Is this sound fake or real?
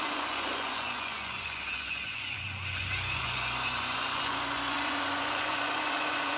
fake